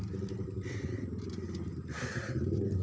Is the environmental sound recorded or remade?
remade